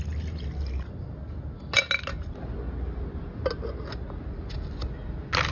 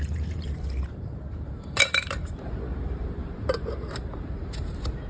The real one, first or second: first